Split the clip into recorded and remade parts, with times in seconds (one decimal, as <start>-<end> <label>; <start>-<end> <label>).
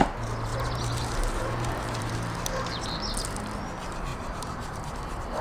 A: 0.0-0.5 recorded; 0.5-2.1 remade; 2.1-4.1 recorded; 4.1-4.9 remade; 4.9-5.4 recorded